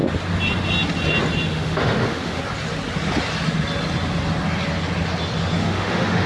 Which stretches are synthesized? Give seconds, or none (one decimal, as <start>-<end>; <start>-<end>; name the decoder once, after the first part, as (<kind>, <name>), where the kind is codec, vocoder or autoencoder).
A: 1.5-2.4 (autoencoder, DAC-VAE); 5.6-6.3